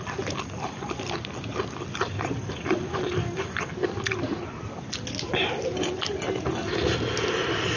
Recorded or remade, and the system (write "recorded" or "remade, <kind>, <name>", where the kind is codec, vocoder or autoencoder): recorded